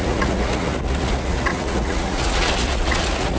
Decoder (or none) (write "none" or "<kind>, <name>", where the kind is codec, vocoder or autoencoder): vocoder, Vocos